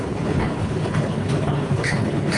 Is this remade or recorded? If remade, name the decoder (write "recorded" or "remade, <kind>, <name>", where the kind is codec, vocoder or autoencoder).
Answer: remade, codec, HILCodec